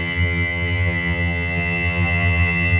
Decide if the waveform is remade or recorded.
remade